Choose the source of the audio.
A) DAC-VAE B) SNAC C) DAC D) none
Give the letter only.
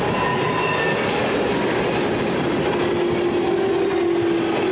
D